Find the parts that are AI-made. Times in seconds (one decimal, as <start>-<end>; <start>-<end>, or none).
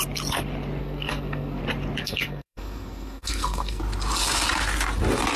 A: 0.8-1.6; 2.0-3.8